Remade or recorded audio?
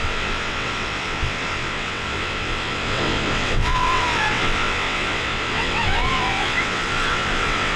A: remade